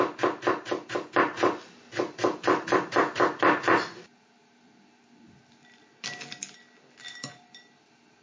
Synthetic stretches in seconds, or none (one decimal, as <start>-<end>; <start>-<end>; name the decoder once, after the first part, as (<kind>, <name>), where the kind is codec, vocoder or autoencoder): none